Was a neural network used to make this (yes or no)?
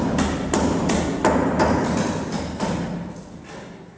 no